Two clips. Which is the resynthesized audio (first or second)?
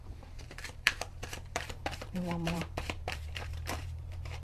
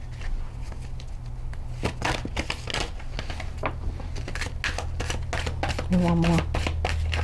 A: first